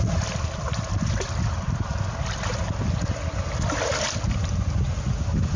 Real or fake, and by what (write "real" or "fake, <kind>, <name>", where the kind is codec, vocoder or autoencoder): real